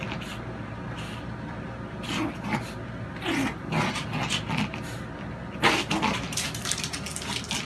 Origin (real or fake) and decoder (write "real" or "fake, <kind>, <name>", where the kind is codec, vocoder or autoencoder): real